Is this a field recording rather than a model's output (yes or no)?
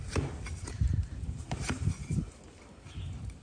no